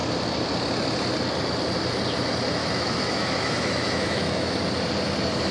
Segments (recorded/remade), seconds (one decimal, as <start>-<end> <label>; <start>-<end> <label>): 0.0-2.6 recorded; 2.6-4.6 remade; 4.6-5.5 recorded